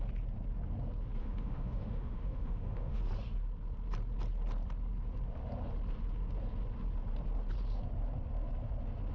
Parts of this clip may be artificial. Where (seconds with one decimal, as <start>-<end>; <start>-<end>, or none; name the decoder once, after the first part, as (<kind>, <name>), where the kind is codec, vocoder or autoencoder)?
1.2-3.0 (autoencoder, DAC-VAE)